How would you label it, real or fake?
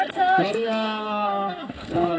fake